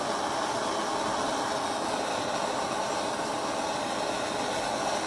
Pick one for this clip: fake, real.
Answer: real